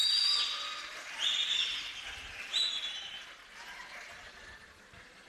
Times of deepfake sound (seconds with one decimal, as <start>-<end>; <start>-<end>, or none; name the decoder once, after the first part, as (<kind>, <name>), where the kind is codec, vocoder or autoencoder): none